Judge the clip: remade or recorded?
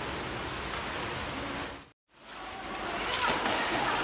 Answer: recorded